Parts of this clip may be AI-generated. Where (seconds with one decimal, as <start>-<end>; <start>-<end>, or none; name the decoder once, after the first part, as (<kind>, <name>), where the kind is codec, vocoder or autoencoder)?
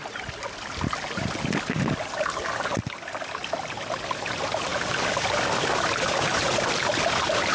none